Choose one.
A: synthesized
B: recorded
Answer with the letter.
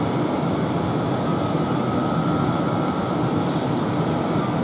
B